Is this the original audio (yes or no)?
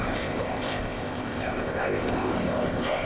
no